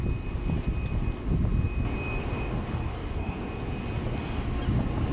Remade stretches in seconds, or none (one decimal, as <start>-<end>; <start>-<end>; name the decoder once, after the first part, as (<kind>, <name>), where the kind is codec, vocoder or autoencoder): 2.2-3.4 (codec, DAC)